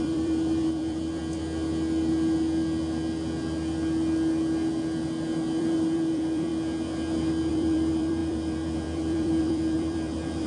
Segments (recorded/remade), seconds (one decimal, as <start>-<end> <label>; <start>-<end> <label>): 0.0-1.2 remade; 1.2-5.6 recorded; 5.6-6.5 remade; 6.5-7.5 recorded; 7.5-10.5 remade